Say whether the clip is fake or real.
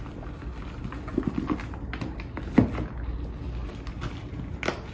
real